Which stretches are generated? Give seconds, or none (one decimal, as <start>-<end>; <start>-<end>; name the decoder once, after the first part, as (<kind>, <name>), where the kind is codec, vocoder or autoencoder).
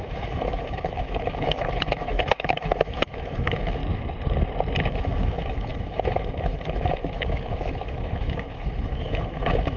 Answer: 0.0-3.8 (autoencoder, DAC-VAE); 4.9-9.8